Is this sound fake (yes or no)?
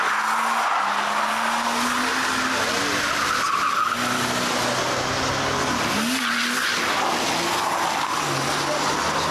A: no